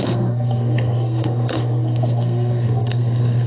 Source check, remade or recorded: remade